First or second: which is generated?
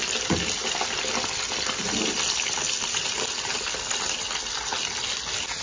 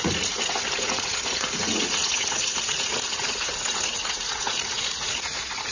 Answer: second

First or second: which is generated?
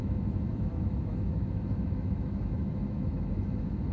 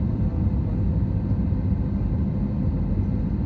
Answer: first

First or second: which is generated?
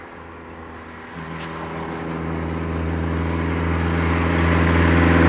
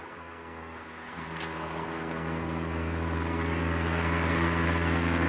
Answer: second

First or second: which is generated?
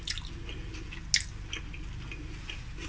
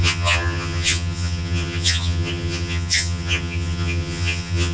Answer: second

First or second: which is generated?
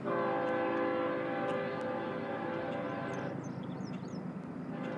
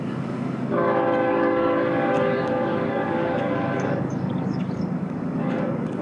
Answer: second